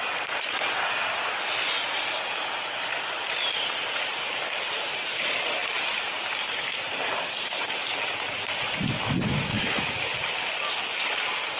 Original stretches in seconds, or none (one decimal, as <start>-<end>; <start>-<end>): 0.0-11.6